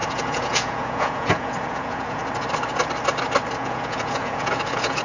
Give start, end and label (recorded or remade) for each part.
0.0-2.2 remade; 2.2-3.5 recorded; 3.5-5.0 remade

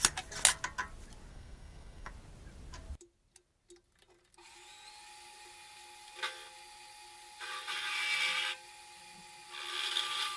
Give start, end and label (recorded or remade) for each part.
0.0-1.3 recorded; 1.3-2.1 remade; 2.1-10.4 recorded

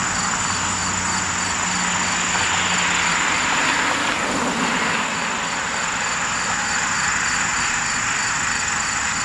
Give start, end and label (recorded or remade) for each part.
0.0-9.2 recorded

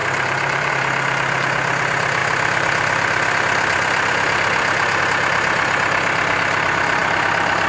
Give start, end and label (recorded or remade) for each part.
0.0-0.7 remade; 0.7-2.2 recorded; 2.2-5.0 remade; 5.0-7.7 recorded

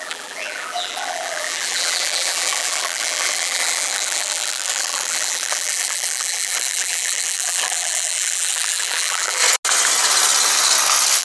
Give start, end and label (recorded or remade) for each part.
0.0-9.4 remade; 9.4-11.2 recorded

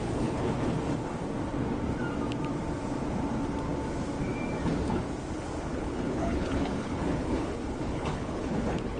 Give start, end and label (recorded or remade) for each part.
0.0-0.5 remade; 0.5-5.7 recorded; 5.7-9.0 remade

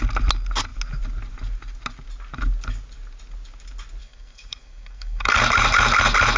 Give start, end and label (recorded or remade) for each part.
0.0-4.0 recorded; 4.0-5.4 remade; 5.4-6.4 recorded

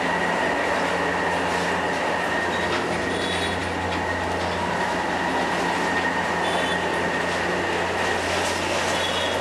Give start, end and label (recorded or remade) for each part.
0.0-9.4 recorded